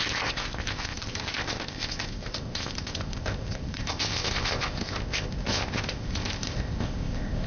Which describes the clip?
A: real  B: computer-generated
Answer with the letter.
B